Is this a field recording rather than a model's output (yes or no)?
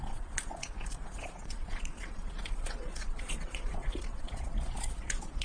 no